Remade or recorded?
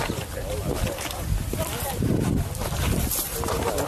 recorded